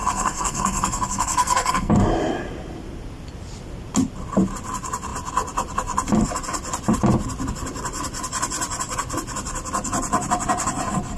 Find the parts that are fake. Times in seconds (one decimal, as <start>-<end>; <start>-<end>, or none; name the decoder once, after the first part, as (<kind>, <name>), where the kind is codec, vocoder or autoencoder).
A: 0.0-1.9 (codec, SNAC)